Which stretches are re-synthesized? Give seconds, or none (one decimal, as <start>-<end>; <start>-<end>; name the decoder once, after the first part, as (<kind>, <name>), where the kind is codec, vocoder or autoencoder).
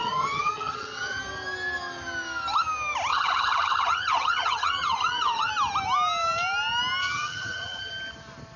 0.0-1.2 (vocoder, HiFi-GAN); 3.1-5.5; 7.0-7.9